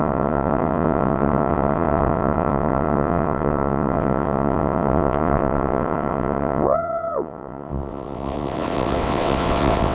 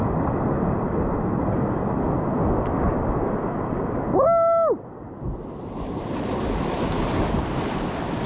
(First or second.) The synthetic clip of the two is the first